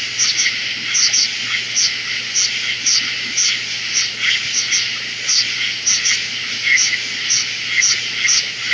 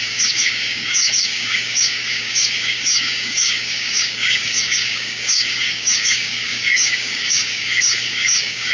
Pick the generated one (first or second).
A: second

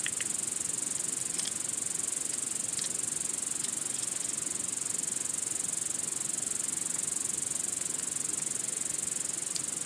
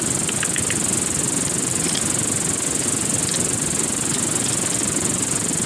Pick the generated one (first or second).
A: second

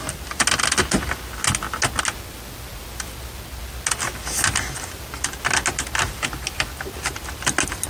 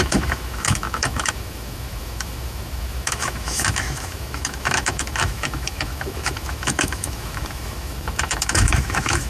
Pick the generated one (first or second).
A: second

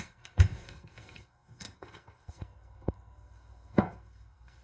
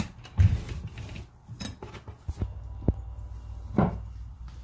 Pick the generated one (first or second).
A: first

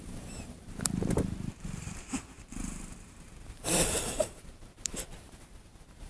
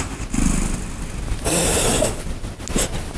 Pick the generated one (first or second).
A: first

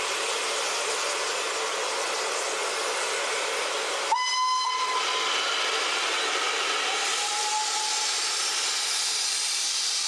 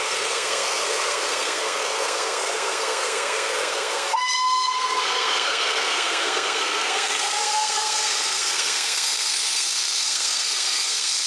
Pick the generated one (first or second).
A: second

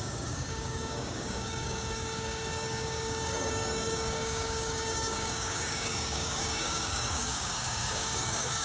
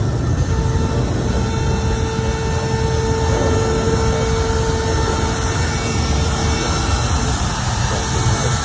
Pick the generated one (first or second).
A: first